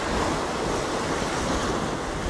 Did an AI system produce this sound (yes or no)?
no